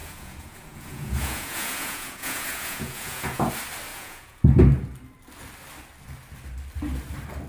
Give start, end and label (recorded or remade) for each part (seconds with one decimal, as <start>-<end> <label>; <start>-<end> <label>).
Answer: 0.0-3.5 remade; 3.5-3.9 recorded; 3.9-4.4 remade; 4.4-7.5 recorded